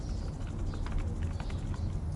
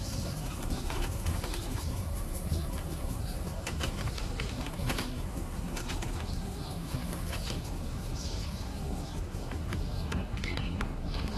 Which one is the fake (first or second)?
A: second